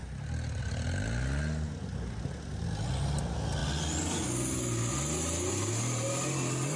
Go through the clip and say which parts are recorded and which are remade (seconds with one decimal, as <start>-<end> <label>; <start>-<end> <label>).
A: 0.0-6.8 recorded